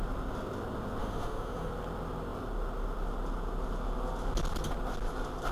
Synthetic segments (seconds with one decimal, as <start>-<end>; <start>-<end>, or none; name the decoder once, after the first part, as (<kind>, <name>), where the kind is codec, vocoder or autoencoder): 1.0-1.7 (autoencoder, DAC-VAE)